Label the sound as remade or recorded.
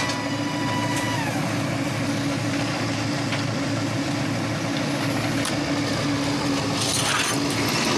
recorded